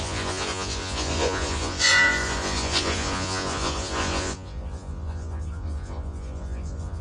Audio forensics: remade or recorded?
remade